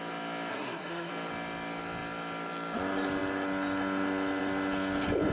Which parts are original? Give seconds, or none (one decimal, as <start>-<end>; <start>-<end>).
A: 0.0-0.5; 1.1-5.3